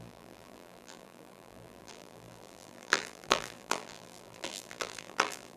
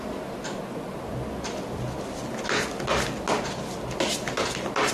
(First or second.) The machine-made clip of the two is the first